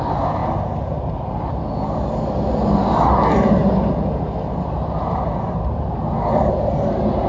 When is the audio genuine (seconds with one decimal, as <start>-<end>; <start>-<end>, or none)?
0.0-7.3

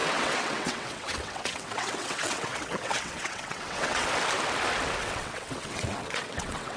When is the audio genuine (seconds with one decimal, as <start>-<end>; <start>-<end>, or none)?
4.1-5.0

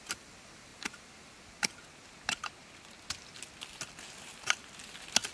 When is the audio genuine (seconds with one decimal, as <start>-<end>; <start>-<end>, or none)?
0.0-5.3

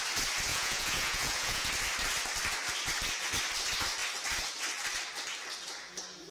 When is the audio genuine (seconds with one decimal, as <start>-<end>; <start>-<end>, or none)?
0.0-0.5; 1.7-6.3

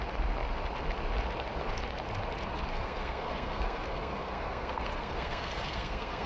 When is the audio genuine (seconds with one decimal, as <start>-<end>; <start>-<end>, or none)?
0.0-2.7